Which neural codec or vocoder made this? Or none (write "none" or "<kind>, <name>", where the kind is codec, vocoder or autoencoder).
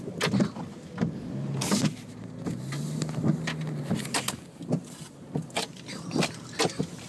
none